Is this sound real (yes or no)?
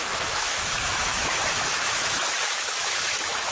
no